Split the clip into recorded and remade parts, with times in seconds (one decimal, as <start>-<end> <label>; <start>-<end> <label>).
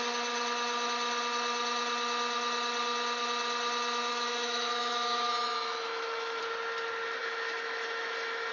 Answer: 0.0-4.1 recorded; 4.1-6.4 remade; 6.4-7.2 recorded; 7.2-8.5 remade